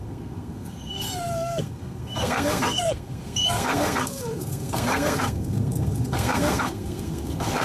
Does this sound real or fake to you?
fake